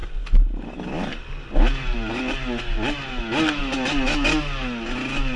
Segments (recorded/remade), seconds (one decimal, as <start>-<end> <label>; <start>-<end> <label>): 0.0-5.4 recorded